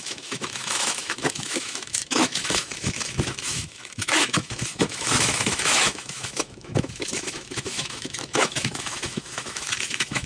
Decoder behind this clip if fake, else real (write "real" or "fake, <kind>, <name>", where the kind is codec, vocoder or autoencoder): fake, autoencoder, DAC-VAE